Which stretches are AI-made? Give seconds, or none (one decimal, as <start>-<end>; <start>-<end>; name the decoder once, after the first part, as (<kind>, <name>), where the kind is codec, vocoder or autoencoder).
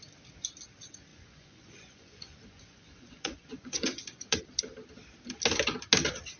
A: 1.1-4.4 (vocoder, Vocos)